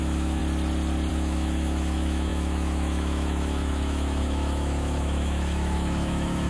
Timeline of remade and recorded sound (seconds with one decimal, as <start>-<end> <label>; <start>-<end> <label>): 0.0-0.4 remade; 0.4-1.1 recorded; 1.1-6.5 remade